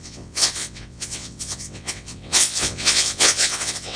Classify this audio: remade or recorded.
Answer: remade